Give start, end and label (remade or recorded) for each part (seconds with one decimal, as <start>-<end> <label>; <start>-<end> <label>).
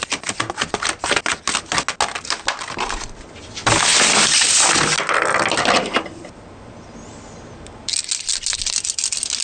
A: 0.0-9.4 recorded